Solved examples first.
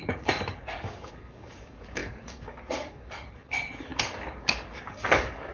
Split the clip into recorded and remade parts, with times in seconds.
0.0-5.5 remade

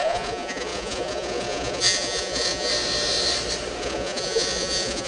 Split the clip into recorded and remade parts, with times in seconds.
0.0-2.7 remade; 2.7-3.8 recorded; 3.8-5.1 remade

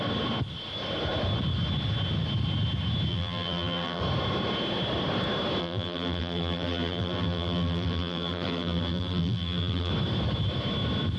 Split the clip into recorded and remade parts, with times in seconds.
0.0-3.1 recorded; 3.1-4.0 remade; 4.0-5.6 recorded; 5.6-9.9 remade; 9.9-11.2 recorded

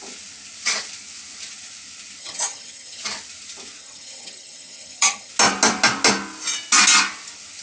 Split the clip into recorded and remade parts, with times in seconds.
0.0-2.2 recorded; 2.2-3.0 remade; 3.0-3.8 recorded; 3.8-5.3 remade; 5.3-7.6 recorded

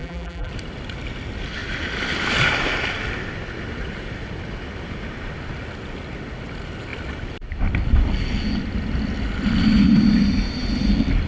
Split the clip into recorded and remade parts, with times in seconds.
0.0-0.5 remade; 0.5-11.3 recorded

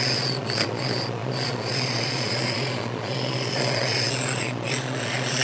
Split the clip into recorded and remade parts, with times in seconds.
0.0-5.4 remade

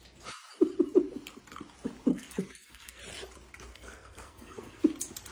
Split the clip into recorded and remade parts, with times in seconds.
0.0-2.1 recorded; 2.1-3.0 remade; 3.0-3.7 recorded; 3.7-4.8 remade; 4.8-5.3 recorded

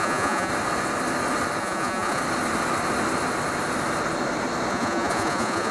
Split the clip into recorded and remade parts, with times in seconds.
0.0-0.5 remade; 0.5-1.6 recorded; 1.6-2.2 remade; 2.2-4.7 recorded; 4.7-5.7 remade